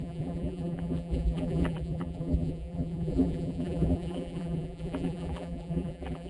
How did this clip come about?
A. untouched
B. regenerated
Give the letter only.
B